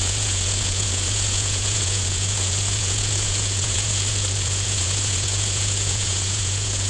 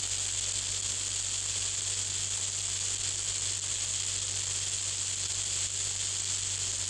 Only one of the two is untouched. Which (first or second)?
second